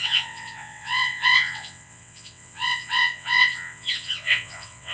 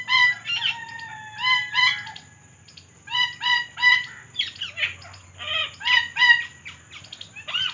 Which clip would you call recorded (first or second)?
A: second